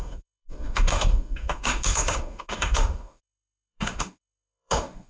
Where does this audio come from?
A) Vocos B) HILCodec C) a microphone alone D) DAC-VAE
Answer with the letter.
D